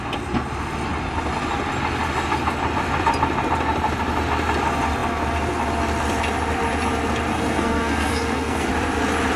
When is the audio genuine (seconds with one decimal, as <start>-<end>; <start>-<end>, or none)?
0.0-7.3; 8.7-9.4